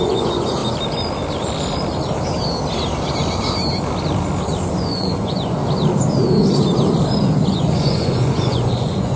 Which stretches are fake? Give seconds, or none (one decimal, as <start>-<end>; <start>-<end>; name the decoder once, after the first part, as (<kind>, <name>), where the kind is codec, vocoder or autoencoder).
0.0-0.6 (vocoder, Vocos); 4.8-5.6; 7.5-9.2